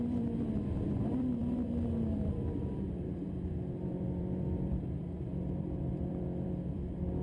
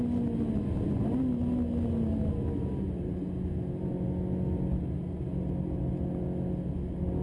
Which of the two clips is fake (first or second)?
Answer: first